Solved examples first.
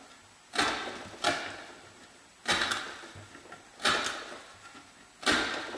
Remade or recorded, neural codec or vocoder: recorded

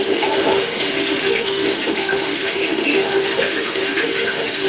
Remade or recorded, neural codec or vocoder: remade, autoencoder, DAC-VAE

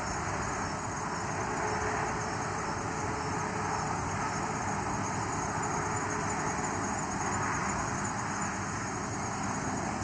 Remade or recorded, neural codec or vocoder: recorded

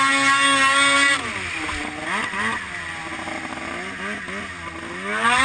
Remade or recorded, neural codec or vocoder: recorded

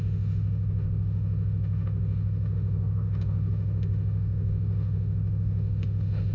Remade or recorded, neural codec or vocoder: remade, autoencoder, DAC-VAE